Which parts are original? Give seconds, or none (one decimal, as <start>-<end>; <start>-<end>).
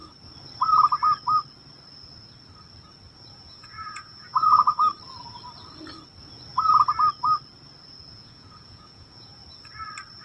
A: 0.0-3.3; 4.9-8.1; 9.4-10.2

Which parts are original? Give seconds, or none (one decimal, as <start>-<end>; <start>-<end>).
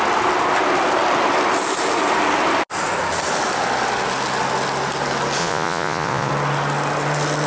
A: 0.0-5.4; 6.3-7.5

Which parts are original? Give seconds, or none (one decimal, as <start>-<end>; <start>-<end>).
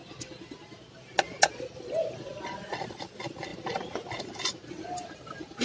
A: 0.0-5.6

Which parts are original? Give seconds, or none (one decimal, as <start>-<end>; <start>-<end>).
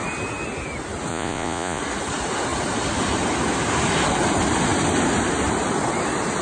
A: 0.0-1.1; 1.8-6.4